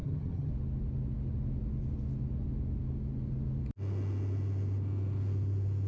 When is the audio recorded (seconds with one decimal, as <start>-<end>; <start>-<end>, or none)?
0.5-5.9